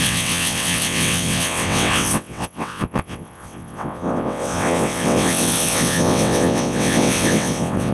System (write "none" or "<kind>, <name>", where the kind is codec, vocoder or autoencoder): vocoder, WaveNeXt